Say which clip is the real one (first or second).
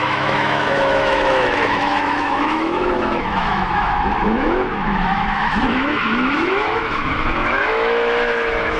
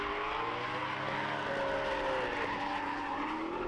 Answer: second